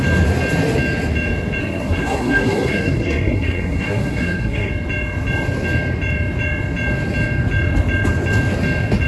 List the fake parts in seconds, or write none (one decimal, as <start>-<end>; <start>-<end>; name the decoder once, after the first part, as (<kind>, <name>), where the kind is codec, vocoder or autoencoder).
1.6-4.7 (codec, SNAC)